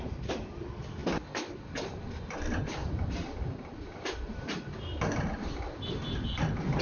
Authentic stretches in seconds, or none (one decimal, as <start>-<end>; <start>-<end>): 0.0-6.8